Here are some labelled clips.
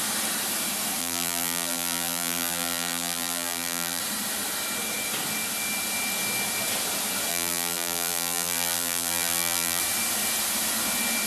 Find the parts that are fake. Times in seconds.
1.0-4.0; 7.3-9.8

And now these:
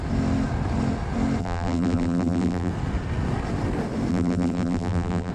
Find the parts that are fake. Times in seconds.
1.4-2.7; 4.1-5.3

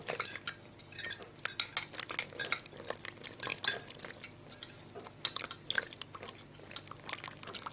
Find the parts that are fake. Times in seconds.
none

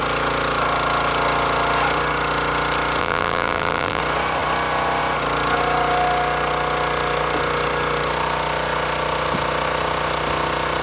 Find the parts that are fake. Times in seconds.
3.0-4.0